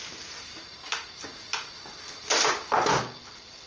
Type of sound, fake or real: real